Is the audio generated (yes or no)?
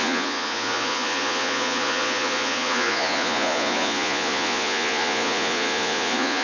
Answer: yes